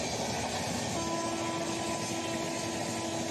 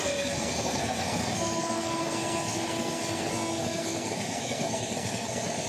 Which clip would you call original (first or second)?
first